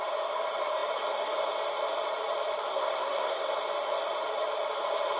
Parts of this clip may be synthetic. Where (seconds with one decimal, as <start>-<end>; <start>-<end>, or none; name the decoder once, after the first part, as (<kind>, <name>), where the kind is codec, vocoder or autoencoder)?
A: 2.7-3.5 (codec, SNAC)